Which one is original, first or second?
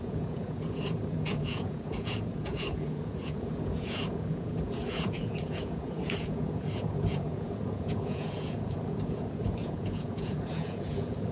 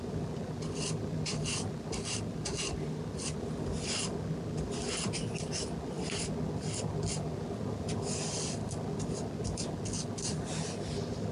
second